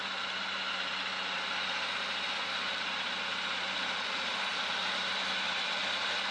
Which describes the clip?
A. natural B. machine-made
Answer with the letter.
A